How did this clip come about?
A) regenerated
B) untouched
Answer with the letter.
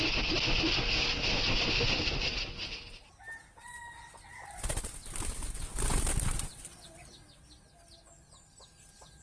B